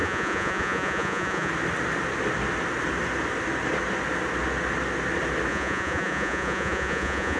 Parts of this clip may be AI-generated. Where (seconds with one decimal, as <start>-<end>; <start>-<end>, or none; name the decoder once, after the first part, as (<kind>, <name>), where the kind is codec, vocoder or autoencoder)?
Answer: 0.0-1.5 (vocoder, Vocos); 5.5-7.4